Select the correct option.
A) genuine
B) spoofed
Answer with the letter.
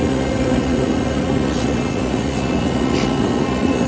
B